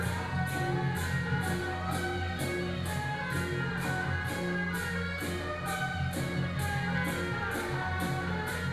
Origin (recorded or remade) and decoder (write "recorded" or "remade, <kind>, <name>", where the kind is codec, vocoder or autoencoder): recorded